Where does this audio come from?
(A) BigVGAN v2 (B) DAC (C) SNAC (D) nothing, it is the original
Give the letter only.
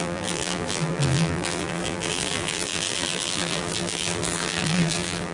A